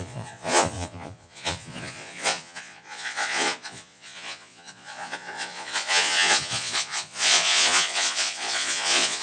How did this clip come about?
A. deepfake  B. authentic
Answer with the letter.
A